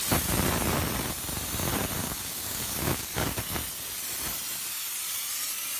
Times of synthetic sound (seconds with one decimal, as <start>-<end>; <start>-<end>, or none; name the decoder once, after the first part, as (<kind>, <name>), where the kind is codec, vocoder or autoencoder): 2.0-3.4 (codec, DAC)